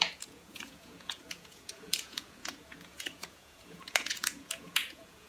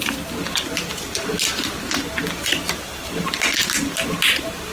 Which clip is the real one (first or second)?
second